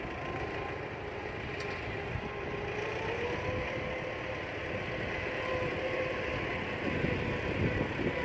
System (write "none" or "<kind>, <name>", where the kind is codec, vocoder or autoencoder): none